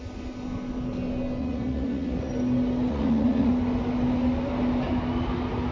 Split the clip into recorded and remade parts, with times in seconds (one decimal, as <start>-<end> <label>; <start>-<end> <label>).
0.0-1.4 recorded; 1.4-2.3 remade; 2.3-2.9 recorded; 2.9-3.5 remade; 3.5-5.7 recorded